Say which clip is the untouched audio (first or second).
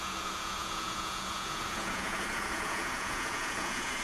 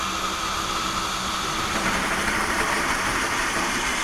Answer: second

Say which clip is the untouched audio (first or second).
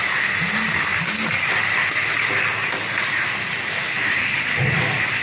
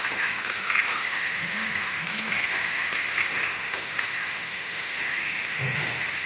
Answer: first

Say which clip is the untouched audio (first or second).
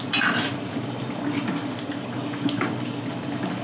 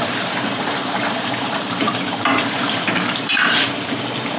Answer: first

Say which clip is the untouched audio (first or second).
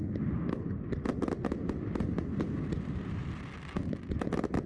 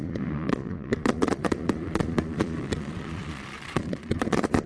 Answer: first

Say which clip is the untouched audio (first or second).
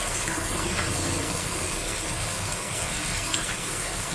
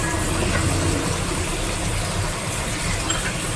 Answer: second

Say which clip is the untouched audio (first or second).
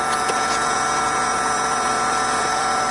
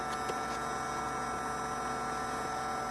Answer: second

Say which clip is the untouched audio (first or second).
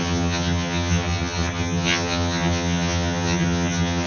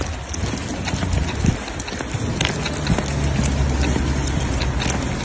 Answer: second